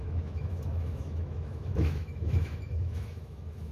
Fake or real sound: fake